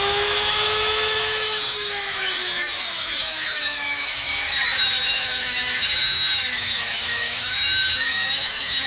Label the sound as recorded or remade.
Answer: remade